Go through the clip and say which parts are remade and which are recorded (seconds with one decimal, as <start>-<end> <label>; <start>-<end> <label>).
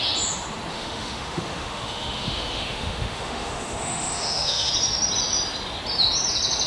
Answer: 0.0-0.7 recorded; 0.7-4.7 remade; 4.7-6.7 recorded